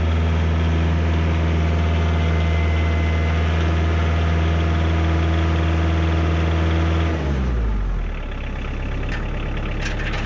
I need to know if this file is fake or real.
real